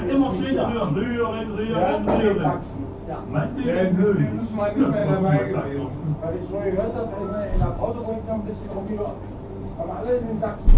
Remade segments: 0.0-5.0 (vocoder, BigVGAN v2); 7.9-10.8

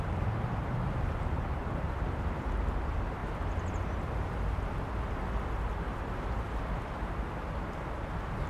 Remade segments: 0.0-3.2 (vocoder, BigVGAN v2); 6.6-8.5

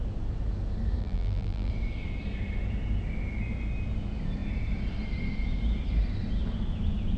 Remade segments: 1.0-1.7 (vocoder, BigVGAN v2)

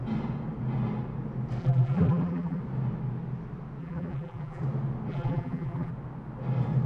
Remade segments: 1.6-2.6 (vocoder, BigVGAN v2); 3.8-4.6; 5.1-5.9

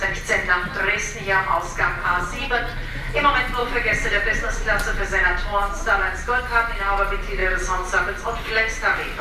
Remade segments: 3.6-6.4 (vocoder, BigVGAN v2)

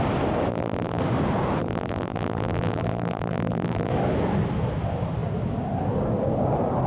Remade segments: 0.5-1.0 (vocoder, BigVGAN v2); 1.6-3.9

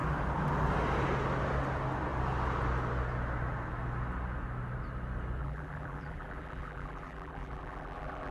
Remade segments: 5.4-8.3 (vocoder, BigVGAN v2)

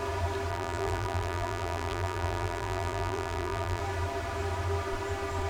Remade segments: 0.5-3.8 (vocoder, BigVGAN v2)